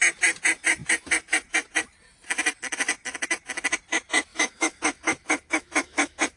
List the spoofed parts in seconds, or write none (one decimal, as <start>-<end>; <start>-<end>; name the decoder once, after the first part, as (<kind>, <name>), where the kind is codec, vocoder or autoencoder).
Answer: 4.3-6.4 (autoencoder, DAC-VAE)